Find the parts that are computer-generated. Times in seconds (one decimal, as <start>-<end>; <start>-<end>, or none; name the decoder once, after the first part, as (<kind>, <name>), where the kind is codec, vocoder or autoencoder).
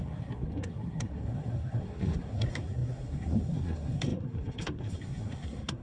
0.0-5.8 (codec, SNAC)